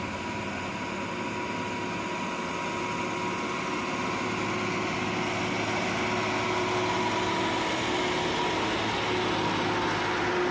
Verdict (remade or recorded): recorded